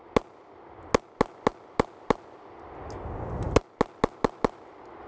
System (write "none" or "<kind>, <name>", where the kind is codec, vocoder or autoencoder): none